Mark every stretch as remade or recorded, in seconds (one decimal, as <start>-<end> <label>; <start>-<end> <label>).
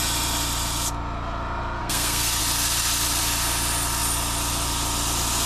0.0-1.8 recorded; 1.8-2.4 remade; 2.4-5.5 recorded